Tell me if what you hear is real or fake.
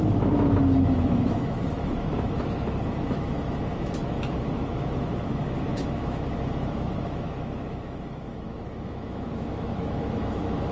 fake